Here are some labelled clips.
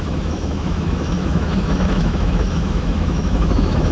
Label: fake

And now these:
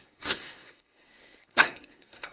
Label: fake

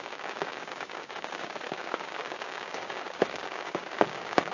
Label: fake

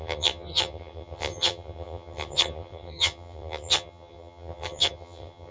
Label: fake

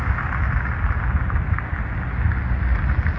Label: real